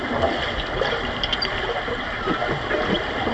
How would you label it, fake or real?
real